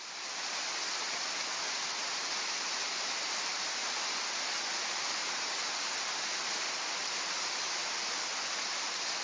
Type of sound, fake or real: real